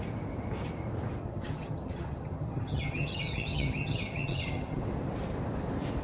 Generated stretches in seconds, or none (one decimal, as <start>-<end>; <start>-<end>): 1.2-4.8

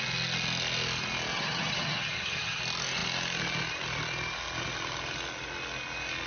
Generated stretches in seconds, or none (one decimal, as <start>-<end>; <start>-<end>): 1.3-2.6

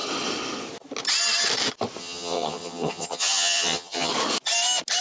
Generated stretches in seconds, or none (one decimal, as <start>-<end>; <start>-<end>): 2.0-4.1

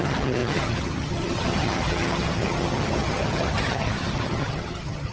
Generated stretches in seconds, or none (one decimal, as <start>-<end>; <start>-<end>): 0.0-5.1

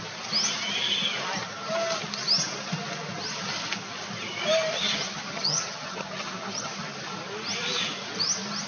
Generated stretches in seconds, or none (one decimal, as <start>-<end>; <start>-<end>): 4.7-6.7